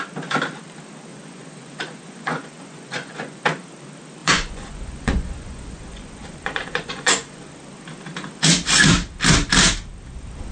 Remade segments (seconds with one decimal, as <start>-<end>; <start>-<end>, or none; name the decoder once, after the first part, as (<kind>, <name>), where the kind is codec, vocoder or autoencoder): 1.1-3.4 (vocoder, Vocos); 4.2-7.5